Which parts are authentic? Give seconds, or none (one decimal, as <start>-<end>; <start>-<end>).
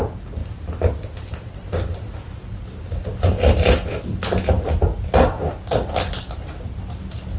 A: 0.0-7.4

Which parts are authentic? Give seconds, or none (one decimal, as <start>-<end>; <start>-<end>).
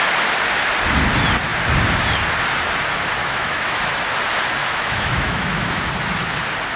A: 0.0-3.2; 3.8-4.6; 5.8-6.8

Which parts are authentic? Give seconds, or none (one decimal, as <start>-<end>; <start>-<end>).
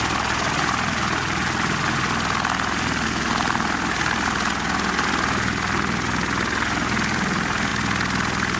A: 0.0-8.6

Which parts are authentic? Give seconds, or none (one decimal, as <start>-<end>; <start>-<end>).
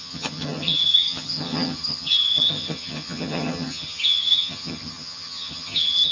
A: none